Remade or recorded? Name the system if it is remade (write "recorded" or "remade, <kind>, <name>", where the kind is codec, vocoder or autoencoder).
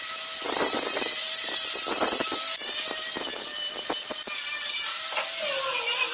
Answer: remade, vocoder, BigVGAN v2